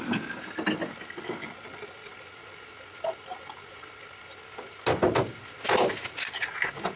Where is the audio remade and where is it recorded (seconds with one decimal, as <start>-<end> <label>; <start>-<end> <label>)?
0.0-7.0 recorded